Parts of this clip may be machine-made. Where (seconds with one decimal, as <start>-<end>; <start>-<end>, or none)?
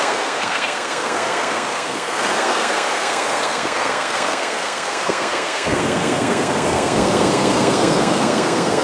0.0-8.8